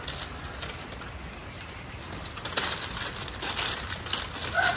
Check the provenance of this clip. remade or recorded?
recorded